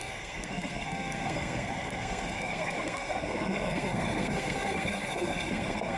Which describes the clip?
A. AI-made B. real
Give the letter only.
A